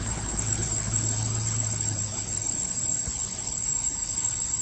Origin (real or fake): fake